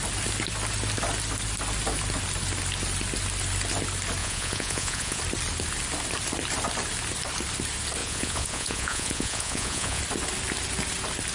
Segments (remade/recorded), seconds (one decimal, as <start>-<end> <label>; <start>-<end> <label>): 0.0-4.2 recorded; 4.2-5.2 remade; 5.2-8.0 recorded; 8.0-10.0 remade; 10.0-11.3 recorded

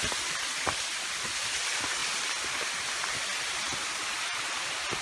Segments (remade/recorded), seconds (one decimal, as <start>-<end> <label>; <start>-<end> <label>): 0.0-5.0 recorded

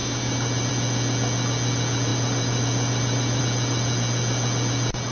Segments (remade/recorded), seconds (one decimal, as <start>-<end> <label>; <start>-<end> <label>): 0.0-0.7 remade; 0.7-2.1 recorded; 2.1-3.4 remade; 3.4-5.1 recorded

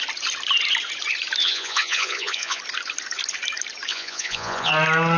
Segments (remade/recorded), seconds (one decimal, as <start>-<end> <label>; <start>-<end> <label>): 0.0-1.4 recorded; 1.4-2.6 remade; 2.6-3.9 recorded; 3.9-4.7 remade; 4.7-5.2 recorded

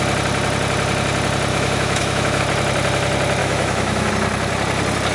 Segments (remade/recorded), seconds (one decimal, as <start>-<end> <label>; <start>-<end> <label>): 0.0-1.5 recorded; 1.5-2.4 remade; 2.4-3.4 recorded; 3.4-4.1 remade; 4.1-5.1 recorded

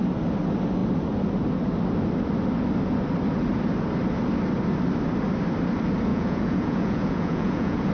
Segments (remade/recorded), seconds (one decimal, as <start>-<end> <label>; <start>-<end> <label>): 0.0-6.1 recorded; 6.1-7.9 remade

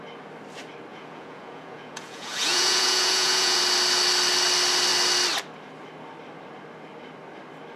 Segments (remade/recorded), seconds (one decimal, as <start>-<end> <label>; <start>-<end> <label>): 0.0-0.9 recorded; 0.9-3.6 remade; 3.6-7.8 recorded

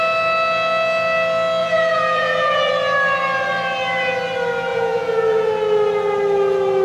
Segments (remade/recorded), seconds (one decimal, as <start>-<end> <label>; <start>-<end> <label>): 0.0-1.6 recorded; 1.6-2.7 remade; 2.7-4.7 recorded; 4.7-5.5 remade; 5.5-6.8 recorded